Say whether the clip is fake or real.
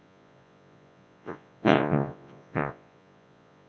fake